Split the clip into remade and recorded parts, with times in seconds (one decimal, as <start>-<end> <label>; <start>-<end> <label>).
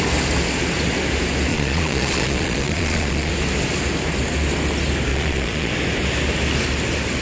0.0-1.5 recorded; 1.5-3.3 remade; 3.3-5.1 recorded; 5.1-5.7 remade; 5.7-7.2 recorded